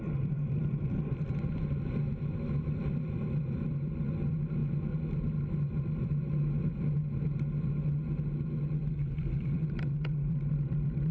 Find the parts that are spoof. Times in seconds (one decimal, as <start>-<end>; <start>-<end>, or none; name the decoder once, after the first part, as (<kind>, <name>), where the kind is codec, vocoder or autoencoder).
0.0-4.6 (vocoder, BigVGAN v2); 5.1-6.7; 8.9-11.1